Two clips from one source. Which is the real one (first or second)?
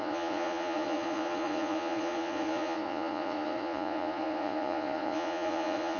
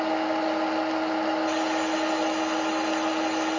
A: second